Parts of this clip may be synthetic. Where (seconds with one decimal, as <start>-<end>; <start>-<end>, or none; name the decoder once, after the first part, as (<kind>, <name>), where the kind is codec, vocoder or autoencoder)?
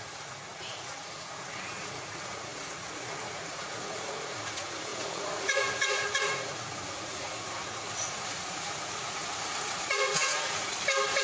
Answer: 0.0-10.7 (vocoder, Vocos)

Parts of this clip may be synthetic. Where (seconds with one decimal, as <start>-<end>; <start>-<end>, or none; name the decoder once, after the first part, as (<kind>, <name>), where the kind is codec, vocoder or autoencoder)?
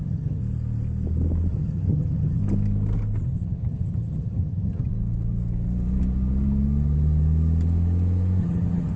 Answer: 0.0-0.4 (vocoder, HiFi-GAN); 1.5-2.4; 3.2-4.9; 8.4-9.0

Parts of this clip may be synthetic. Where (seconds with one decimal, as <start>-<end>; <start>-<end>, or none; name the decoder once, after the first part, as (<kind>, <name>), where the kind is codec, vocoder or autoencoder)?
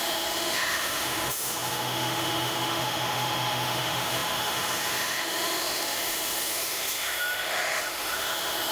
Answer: 0.0-8.7 (autoencoder, DAC-VAE)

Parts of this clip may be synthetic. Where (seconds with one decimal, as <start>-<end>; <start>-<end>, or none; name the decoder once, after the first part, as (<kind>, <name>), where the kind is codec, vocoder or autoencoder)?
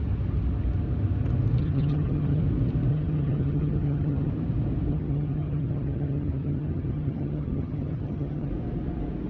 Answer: 1.6-2.4 (vocoder, HiFi-GAN); 2.9-4.3; 4.9-8.5